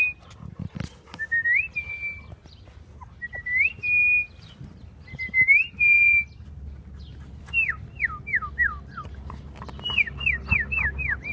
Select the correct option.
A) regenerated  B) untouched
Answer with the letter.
B